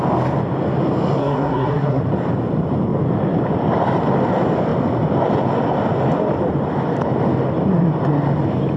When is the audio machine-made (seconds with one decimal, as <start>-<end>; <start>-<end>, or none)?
1.2-2.0